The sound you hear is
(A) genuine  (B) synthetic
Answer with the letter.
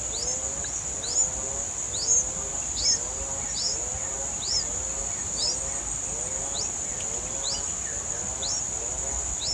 A